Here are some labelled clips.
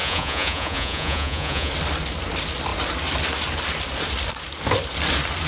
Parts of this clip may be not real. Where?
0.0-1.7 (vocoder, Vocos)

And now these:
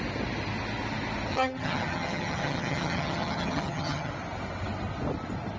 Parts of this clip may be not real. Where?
1.3-4.1 (vocoder, HiFi-GAN)

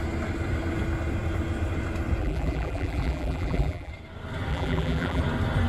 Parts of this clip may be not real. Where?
2.2-3.9 (vocoder, BigVGAN v2); 4.5-5.2